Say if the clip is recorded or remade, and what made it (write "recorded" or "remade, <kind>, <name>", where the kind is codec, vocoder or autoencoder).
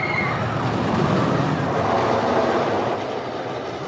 recorded